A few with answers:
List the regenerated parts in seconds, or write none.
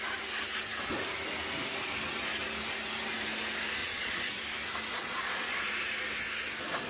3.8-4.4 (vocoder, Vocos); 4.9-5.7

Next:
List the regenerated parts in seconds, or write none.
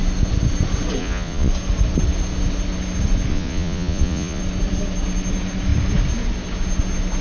1.0-1.5 (vocoder, Vocos); 3.3-4.4